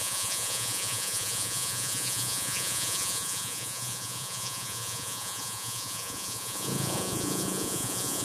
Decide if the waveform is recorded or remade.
remade